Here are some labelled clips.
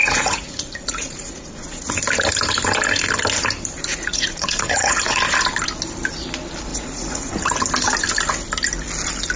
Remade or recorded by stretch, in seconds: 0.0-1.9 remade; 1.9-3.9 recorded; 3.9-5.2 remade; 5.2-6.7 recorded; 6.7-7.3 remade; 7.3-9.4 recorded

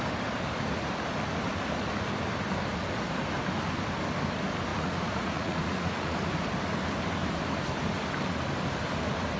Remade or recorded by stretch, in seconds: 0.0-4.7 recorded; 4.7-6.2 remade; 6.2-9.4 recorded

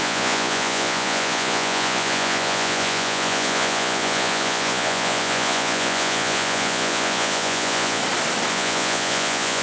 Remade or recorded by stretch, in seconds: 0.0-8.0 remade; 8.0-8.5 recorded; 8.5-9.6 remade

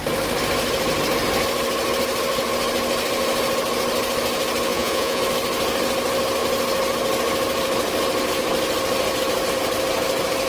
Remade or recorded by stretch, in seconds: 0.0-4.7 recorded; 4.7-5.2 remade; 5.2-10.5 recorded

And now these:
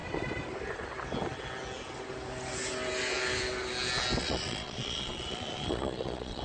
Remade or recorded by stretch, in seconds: 0.0-4.2 recorded; 4.2-6.4 remade

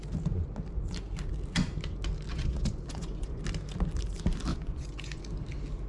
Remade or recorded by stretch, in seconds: 0.0-2.3 recorded; 2.3-3.4 remade; 3.4-4.5 recorded; 4.5-5.2 remade; 5.2-5.9 recorded

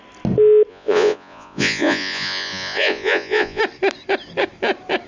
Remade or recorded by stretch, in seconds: 0.0-0.7 recorded; 0.7-3.6 remade; 3.6-5.1 recorded

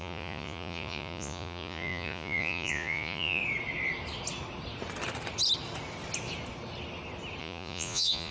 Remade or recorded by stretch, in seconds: 0.0-3.4 remade; 3.4-7.4 recorded; 7.4-8.3 remade